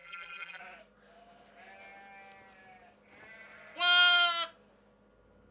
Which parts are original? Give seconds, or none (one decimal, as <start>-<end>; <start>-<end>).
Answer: 0.6-5.5